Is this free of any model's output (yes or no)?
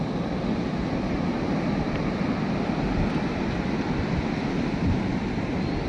yes